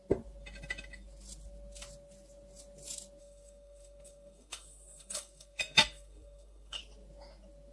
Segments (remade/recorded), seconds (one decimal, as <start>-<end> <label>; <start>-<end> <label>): 0.0-3.2 recorded; 3.2-6.8 remade; 6.8-7.7 recorded

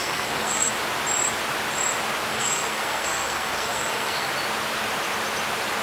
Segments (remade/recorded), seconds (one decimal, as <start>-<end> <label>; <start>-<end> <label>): 0.0-0.7 remade; 0.7-2.3 recorded; 2.3-4.3 remade; 4.3-5.8 recorded